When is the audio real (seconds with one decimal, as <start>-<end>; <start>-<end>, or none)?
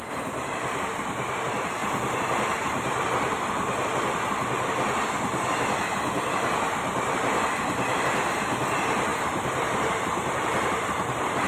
0.0-11.5